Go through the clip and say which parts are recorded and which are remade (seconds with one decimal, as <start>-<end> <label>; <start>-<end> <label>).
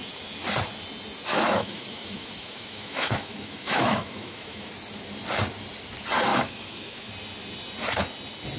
0.0-1.3 recorded; 1.3-4.7 remade; 4.7-6.3 recorded; 6.3-7.1 remade; 7.1-8.6 recorded